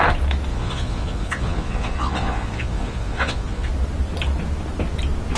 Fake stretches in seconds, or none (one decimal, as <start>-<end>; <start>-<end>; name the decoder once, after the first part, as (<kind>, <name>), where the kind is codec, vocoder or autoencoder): 0.5-3.7 (vocoder, Vocos)